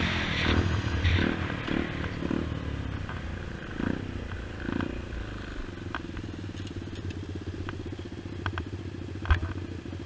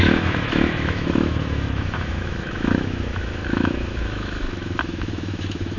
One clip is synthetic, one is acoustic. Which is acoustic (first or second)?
first